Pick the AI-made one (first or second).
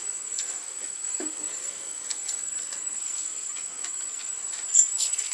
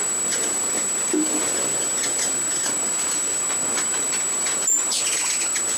first